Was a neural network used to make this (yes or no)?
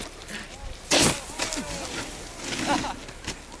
no